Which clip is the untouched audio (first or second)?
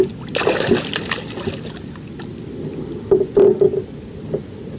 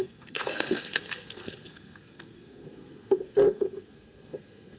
first